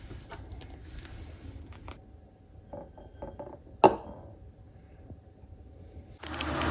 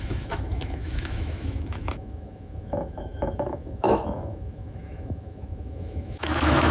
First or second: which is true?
first